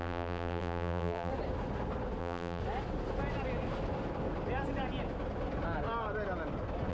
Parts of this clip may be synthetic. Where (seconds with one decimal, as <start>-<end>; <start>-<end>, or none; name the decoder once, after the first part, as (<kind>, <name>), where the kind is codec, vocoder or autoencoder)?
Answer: 0.0-1.3 (vocoder, BigVGAN v2); 2.2-2.6